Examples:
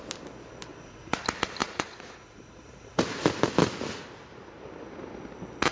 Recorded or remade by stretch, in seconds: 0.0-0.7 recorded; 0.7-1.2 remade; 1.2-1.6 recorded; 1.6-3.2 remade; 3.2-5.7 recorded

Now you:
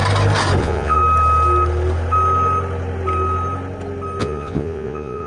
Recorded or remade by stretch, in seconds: 0.0-0.6 recorded; 0.6-1.0 remade; 1.0-4.2 recorded; 4.2-5.3 remade

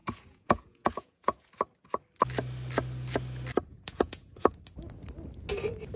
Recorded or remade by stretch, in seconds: 0.0-1.5 remade; 1.5-3.7 recorded; 3.7-4.6 remade; 4.6-6.0 recorded

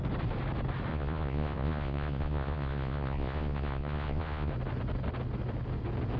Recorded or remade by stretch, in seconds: 0.0-0.9 recorded; 0.9-4.5 remade; 4.5-6.2 recorded

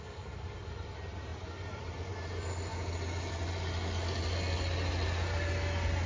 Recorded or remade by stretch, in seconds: 0.0-6.1 recorded

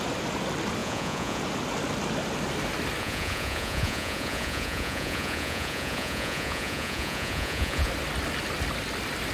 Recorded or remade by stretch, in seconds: 0.0-0.8 recorded; 0.8-1.4 remade; 1.4-3.0 recorded; 3.0-7.9 remade; 7.9-9.3 recorded

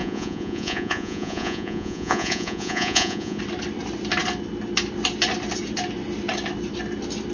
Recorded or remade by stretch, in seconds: 0.0-3.4 remade; 3.4-7.3 recorded

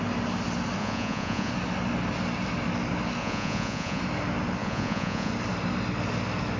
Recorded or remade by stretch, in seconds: 0.0-0.8 recorded; 0.8-1.5 remade; 1.5-3.2 recorded; 3.2-4.0 remade; 4.0-4.6 recorded; 4.6-5.3 remade; 5.3-6.6 recorded